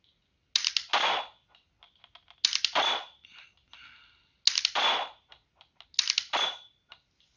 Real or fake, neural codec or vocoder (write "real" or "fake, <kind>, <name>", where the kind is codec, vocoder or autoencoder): real